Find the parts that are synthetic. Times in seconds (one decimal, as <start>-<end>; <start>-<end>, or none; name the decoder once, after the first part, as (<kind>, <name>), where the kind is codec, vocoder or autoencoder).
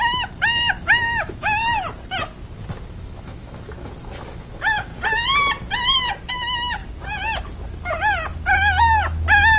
0.0-1.6 (autoencoder, DAC-VAE); 2.8-4.9; 6.3-6.8; 8.8-9.6